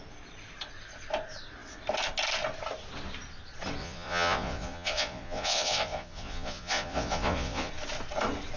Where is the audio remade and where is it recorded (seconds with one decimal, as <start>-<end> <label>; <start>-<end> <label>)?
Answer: 0.0-3.8 recorded; 3.8-7.7 remade; 7.7-8.6 recorded